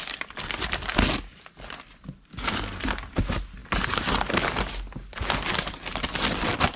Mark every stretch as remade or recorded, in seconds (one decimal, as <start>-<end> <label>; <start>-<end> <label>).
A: 0.0-6.8 recorded